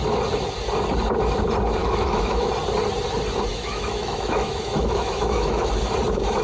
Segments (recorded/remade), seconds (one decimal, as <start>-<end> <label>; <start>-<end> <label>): 0.0-1.8 recorded; 1.8-2.5 remade; 2.5-3.5 recorded; 3.5-5.7 remade; 5.7-6.4 recorded